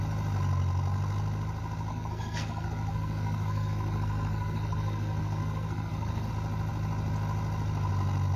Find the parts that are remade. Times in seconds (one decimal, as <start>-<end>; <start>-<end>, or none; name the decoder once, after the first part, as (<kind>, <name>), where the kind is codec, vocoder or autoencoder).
1.9-6.3 (codec, SNAC)